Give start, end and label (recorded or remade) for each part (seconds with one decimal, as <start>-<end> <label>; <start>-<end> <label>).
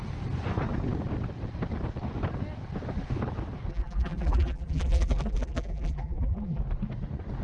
0.0-3.7 recorded; 3.7-6.6 remade; 6.6-7.4 recorded